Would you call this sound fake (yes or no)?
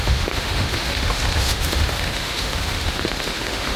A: yes